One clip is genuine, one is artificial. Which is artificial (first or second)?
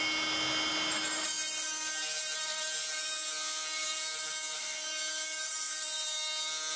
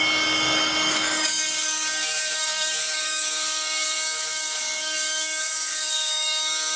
second